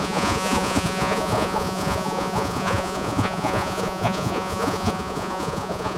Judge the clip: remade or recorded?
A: remade